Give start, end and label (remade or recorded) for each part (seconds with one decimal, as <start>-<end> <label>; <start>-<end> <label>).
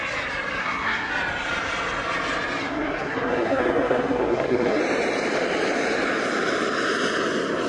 0.0-0.6 recorded; 0.6-1.1 remade; 1.1-2.6 recorded; 2.6-4.8 remade; 4.8-7.7 recorded